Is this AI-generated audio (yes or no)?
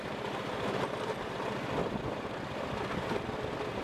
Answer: no